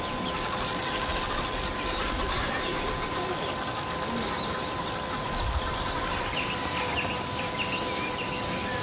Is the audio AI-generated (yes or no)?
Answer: no